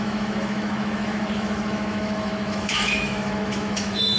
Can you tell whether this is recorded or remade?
remade